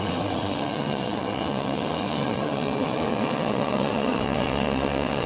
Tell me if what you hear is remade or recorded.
remade